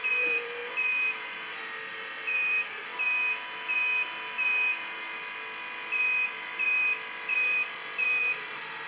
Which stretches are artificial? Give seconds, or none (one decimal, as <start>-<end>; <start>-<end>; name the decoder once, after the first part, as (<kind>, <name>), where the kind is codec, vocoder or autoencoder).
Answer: 0.0-2.9 (vocoder, BigVGAN v2); 6.3-8.9